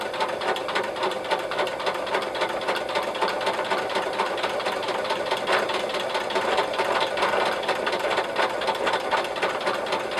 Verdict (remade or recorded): recorded